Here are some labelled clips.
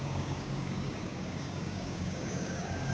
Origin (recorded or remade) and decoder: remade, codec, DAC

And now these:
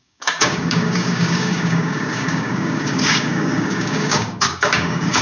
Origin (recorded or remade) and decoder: remade, codec, DAC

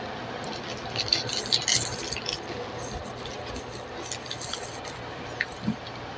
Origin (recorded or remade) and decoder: recorded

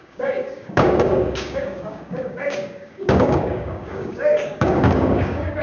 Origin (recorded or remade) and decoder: remade, codec, DAC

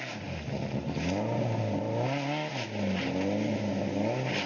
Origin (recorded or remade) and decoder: recorded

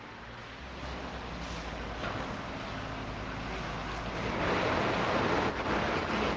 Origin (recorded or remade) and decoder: recorded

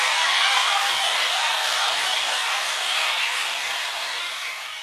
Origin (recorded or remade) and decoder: remade, codec, DAC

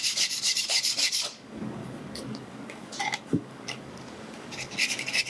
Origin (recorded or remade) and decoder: remade, codec, DAC